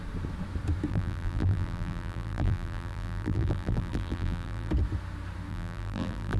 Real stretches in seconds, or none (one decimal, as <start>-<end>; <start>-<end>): 0.0-0.9; 4.7-5.5